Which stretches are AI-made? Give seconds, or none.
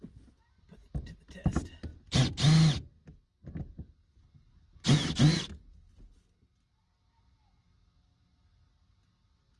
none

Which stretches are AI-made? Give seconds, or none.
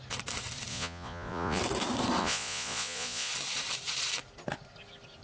0.7-1.6 (vocoder, Vocos); 2.2-3.3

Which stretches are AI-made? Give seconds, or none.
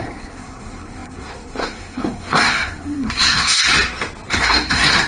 0.0-3.7 (codec, SNAC); 4.3-5.1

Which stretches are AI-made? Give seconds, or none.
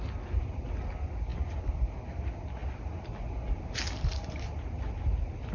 none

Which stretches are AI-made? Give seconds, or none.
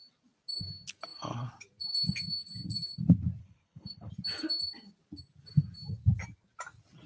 3.4-4.1 (codec, HILCodec)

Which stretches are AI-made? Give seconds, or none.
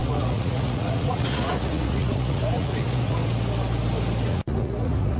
0.0-3.2 (vocoder, Vocos); 4.3-5.2